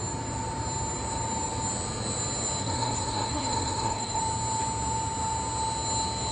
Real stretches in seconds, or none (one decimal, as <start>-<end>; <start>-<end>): 0.0-2.6; 4.2-6.3